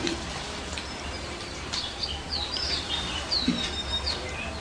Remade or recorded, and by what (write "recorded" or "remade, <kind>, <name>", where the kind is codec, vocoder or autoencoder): recorded